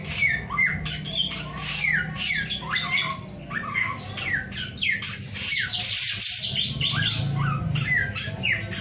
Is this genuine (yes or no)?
yes